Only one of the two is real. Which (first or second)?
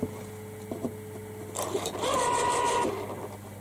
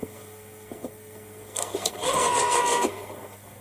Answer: first